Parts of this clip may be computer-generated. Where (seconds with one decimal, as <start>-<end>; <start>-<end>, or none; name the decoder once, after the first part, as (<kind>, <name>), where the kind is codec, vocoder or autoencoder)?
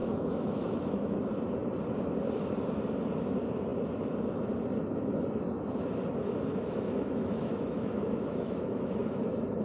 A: 0.0-1.2 (autoencoder, DAC-VAE); 6.5-9.0